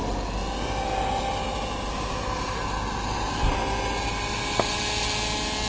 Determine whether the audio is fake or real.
real